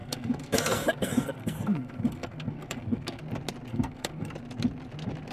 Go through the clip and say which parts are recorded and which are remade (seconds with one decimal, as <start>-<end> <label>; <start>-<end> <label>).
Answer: 0.0-3.2 remade; 3.2-3.7 recorded; 3.7-4.3 remade; 4.3-5.3 recorded